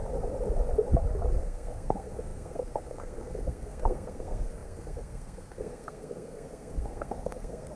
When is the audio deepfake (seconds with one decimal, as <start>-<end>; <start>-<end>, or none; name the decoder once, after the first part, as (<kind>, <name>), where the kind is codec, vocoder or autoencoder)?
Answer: 1.3-7.8 (codec, SNAC)